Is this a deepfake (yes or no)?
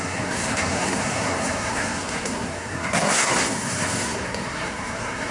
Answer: yes